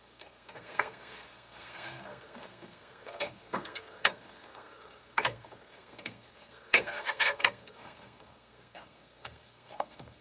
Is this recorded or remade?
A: remade